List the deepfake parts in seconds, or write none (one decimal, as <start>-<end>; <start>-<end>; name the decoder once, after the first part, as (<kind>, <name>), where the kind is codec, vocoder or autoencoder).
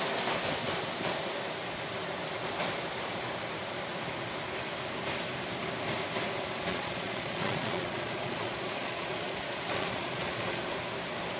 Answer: 6.7-10.6 (vocoder, Vocos)